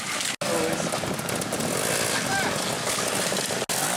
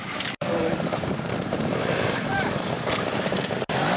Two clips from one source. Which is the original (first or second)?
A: first